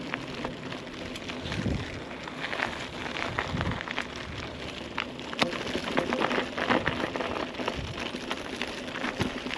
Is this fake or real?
real